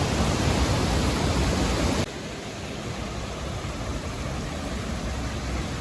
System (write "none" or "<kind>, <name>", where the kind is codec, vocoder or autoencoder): none